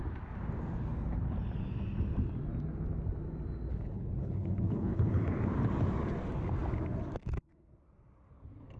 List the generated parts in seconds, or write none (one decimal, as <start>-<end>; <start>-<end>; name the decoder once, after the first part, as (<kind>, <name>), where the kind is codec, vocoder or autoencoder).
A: 3.7-5.1 (codec, HILCodec)